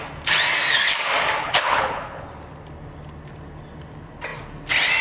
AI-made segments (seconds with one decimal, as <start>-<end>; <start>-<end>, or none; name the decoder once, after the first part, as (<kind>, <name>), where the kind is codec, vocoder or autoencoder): 1.4-2.3 (codec, HILCodec)